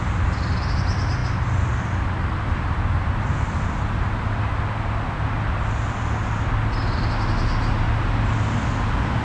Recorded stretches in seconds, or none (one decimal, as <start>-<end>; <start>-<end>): 0.0-9.2